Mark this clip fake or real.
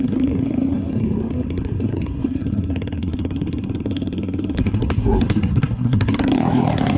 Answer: fake